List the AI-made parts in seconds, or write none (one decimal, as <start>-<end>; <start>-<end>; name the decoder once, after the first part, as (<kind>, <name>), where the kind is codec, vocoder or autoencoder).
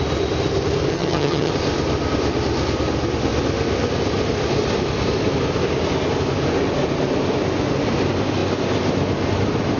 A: 0.9-1.5 (vocoder, HiFi-GAN)